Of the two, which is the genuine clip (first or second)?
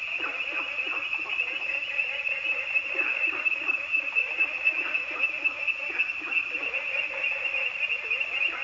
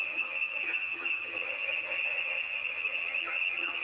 first